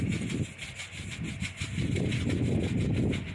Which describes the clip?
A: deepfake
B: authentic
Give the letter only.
B